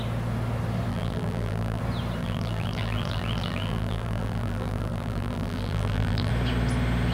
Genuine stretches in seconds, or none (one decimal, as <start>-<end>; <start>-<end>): 0.0-0.9; 1.8-2.2; 6.3-7.1